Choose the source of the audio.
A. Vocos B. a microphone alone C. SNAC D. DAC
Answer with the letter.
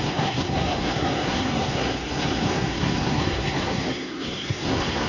C